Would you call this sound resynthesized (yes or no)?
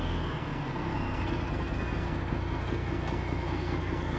yes